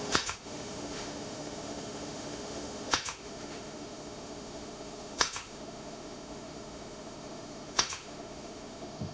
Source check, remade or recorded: remade